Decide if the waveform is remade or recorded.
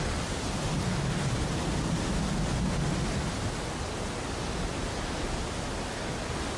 recorded